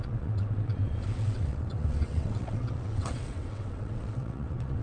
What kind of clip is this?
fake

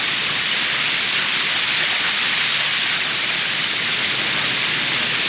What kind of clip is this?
real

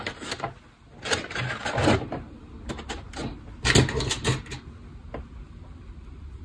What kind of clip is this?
real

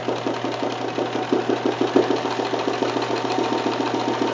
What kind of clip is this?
real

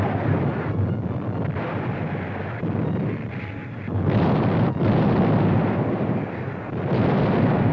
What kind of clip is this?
real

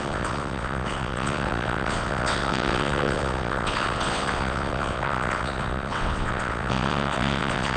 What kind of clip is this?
fake